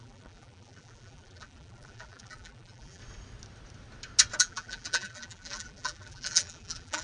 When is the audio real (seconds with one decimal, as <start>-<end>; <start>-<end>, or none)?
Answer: 3.0-4.4